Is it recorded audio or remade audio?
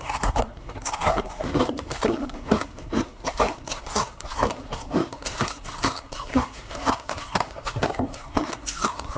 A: remade